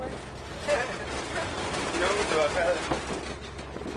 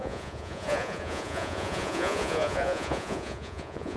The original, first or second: first